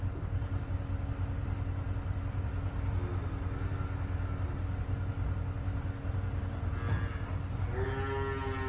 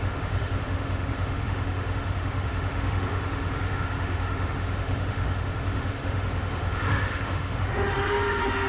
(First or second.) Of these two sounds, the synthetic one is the second